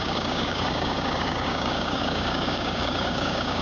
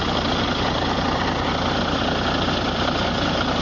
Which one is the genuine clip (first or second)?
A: second